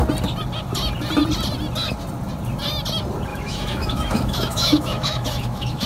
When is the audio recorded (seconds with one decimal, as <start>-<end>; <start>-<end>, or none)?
0.0-3.3